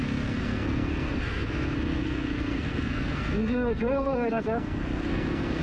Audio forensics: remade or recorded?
remade